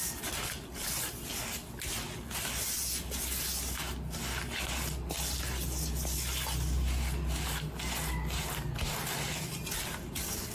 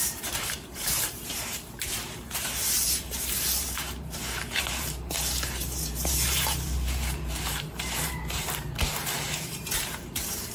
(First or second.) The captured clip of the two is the first